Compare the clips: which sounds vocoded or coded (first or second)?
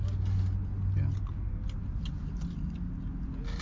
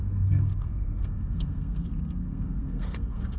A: second